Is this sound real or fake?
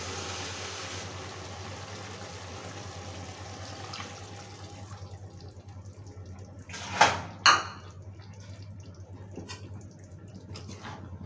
real